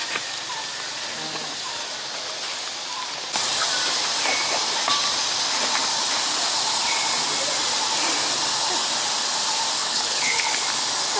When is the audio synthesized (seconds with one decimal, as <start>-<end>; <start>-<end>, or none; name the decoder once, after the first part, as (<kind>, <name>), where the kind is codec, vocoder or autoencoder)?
9.8-10.6 (codec, HILCodec)